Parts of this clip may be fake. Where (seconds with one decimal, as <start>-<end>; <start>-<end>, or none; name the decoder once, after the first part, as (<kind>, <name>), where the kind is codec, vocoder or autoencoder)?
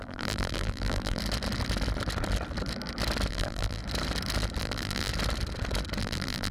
0.0-1.2 (vocoder, BigVGAN v2); 3.3-3.8; 4.6-5.1; 6.0-6.5